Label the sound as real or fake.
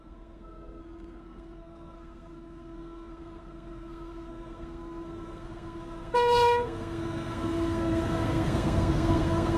fake